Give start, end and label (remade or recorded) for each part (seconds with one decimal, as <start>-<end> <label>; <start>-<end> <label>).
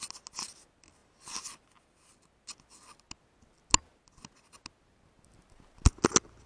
0.0-6.5 recorded